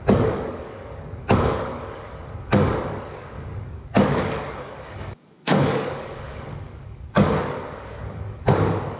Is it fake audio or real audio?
fake